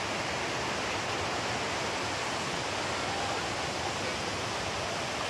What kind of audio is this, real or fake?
real